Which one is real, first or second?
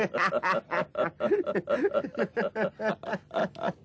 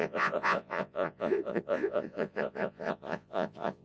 first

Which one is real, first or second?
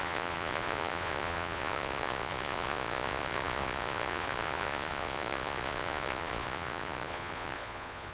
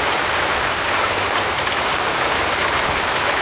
second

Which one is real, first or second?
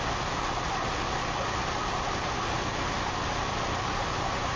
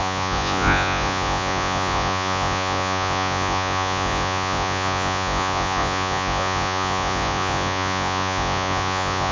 first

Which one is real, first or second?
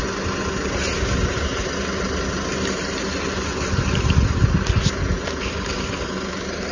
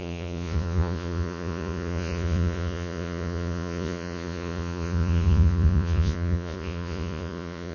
first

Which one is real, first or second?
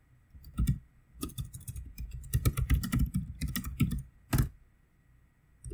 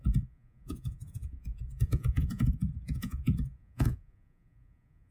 first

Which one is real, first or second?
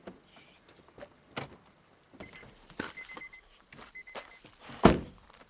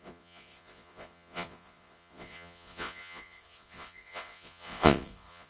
first